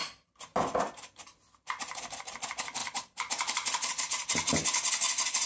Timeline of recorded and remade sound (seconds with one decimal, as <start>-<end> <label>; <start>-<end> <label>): 0.0-2.8 recorded; 2.8-4.0 remade; 4.0-5.5 recorded